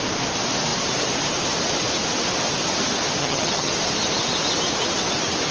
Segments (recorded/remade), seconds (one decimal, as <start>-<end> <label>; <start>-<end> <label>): 0.0-3.2 recorded; 3.2-3.7 remade; 3.7-5.5 recorded